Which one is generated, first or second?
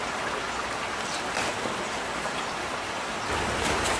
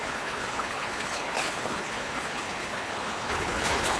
second